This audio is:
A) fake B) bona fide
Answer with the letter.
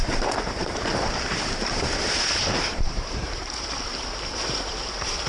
A